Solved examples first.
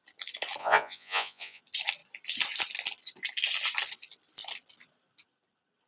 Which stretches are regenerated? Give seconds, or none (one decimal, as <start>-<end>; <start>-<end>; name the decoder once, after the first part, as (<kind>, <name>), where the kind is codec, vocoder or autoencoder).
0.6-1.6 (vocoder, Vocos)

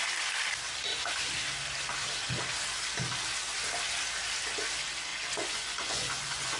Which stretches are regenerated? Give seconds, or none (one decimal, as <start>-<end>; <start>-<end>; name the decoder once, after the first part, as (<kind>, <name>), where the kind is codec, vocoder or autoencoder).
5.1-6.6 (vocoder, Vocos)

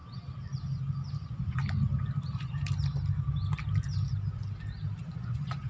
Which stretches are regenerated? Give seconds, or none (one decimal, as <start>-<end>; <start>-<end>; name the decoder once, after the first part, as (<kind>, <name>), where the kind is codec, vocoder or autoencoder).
1.1-1.6 (vocoder, Vocos); 5.0-5.7